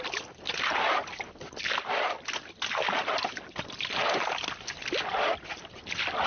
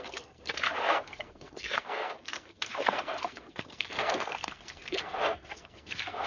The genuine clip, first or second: first